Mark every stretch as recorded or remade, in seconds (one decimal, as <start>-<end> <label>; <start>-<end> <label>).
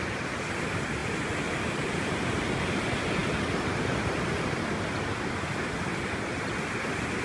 0.0-7.2 recorded